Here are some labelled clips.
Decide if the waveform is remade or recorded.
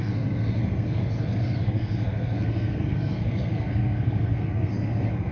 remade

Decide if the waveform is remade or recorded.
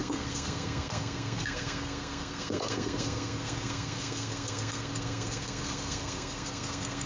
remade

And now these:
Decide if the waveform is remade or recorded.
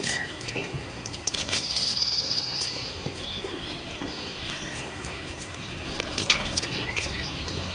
remade